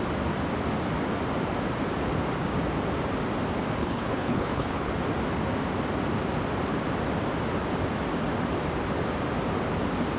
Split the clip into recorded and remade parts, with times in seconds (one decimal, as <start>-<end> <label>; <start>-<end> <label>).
0.0-3.8 recorded; 3.8-4.9 remade; 4.9-10.2 recorded